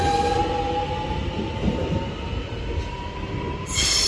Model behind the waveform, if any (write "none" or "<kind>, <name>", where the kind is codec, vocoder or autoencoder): none